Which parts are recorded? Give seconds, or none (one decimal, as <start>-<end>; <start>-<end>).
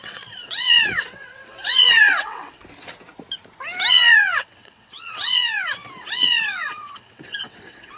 2.6-3.9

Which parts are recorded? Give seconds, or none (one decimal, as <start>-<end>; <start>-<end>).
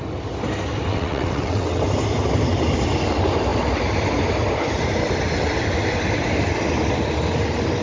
0.0-0.9; 1.8-7.8